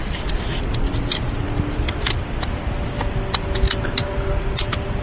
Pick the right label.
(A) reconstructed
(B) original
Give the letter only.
B